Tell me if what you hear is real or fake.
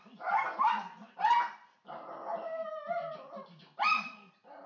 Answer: real